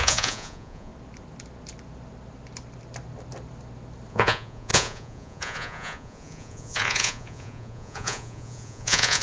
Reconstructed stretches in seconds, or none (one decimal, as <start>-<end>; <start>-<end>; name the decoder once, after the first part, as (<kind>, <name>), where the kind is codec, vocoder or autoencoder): 0.0-0.9 (vocoder, Vocos); 4.1-9.2